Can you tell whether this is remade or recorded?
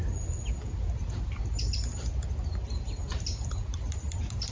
recorded